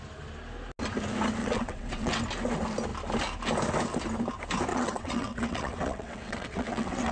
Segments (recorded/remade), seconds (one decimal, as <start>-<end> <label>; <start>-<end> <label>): 0.0-1.4 recorded; 1.4-2.2 remade; 2.2-4.7 recorded; 4.7-7.1 remade